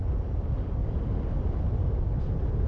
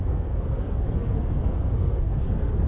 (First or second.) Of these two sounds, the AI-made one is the second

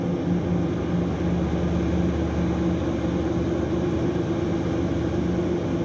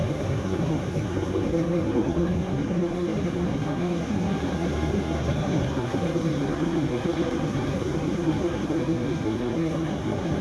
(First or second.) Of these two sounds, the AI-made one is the second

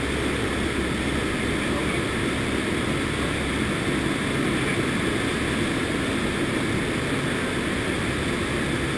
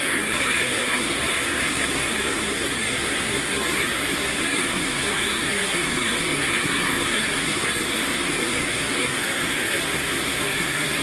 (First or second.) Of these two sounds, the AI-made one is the second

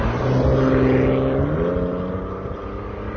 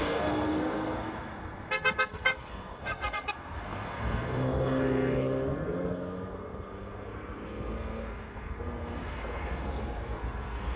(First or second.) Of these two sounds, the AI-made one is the second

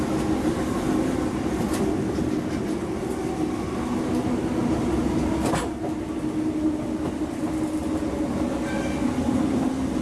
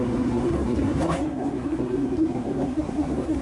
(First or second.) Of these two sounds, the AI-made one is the second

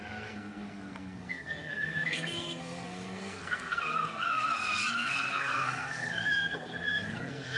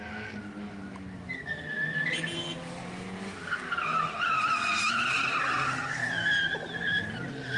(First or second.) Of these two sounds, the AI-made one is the first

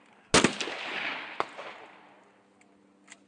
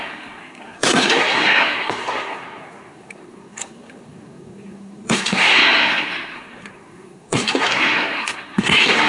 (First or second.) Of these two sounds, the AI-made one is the second